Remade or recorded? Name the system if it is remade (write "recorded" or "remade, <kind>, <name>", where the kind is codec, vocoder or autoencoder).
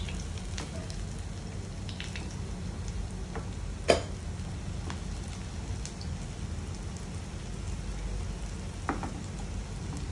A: recorded